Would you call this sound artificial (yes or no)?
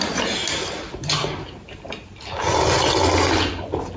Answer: no